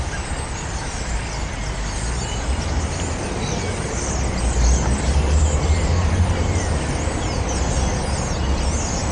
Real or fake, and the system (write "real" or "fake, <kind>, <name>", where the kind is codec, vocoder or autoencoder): real